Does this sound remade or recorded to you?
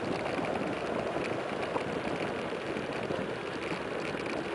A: recorded